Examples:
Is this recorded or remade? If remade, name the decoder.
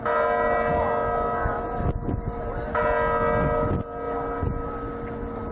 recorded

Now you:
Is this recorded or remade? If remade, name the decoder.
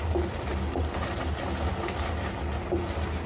recorded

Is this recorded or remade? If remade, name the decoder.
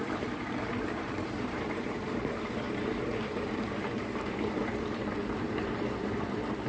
remade, vocoder, BigVGAN v2